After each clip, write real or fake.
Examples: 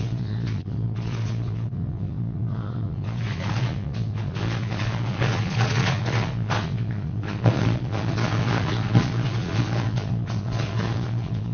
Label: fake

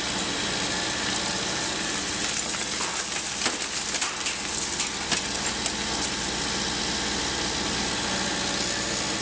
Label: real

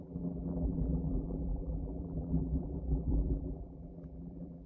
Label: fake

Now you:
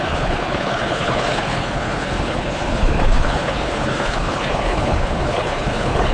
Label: fake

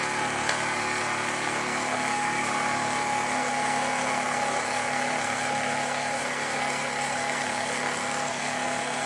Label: fake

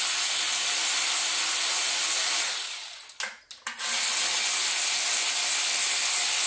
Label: real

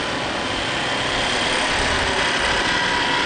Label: real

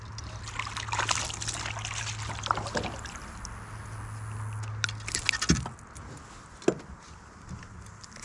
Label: real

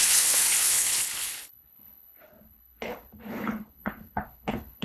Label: fake